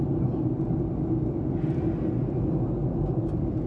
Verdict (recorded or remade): recorded